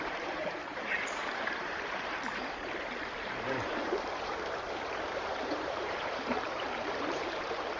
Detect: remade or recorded remade